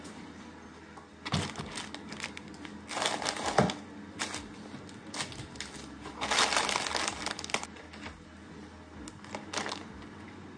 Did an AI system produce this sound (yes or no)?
no